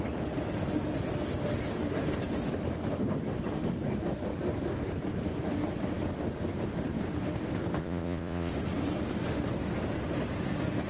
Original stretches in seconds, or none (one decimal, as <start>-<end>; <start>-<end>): 0.0-7.8; 8.5-10.9